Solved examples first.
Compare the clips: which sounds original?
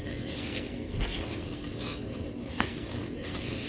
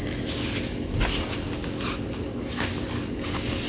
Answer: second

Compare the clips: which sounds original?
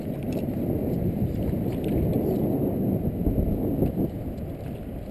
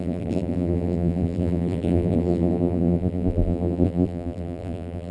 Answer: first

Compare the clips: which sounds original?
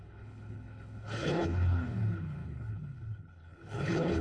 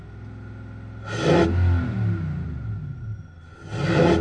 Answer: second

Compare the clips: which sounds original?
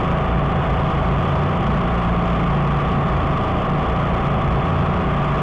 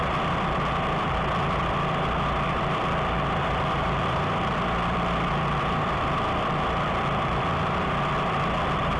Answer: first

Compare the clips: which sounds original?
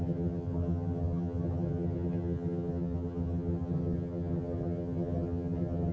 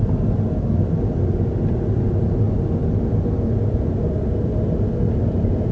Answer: second